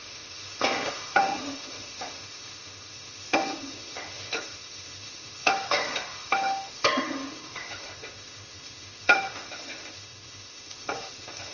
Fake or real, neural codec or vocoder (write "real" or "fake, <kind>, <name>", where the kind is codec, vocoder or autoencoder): fake, autoencoder, DAC-VAE